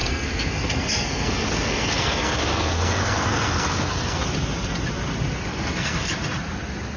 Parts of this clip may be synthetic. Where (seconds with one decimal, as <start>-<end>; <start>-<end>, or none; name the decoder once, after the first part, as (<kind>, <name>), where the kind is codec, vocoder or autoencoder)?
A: 0.0-4.2 (codec, SNAC); 5.5-6.1